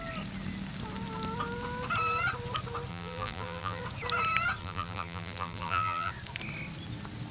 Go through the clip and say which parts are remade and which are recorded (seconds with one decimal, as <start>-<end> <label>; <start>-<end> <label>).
0.0-2.9 recorded; 2.9-3.8 remade; 3.8-4.6 recorded; 4.6-6.1 remade; 6.1-7.3 recorded